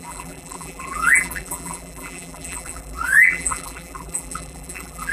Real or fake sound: fake